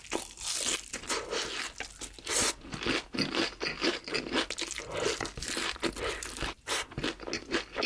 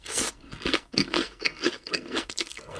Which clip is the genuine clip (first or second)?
first